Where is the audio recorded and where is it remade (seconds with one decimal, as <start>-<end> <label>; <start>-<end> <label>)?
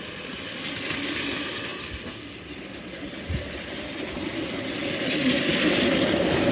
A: 0.0-6.5 recorded